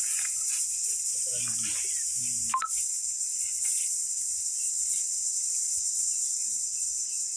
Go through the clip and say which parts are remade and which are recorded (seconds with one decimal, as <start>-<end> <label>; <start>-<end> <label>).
0.0-1.1 remade; 1.1-2.6 recorded; 2.6-7.4 remade